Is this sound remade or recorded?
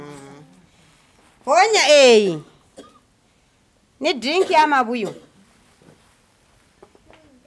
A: recorded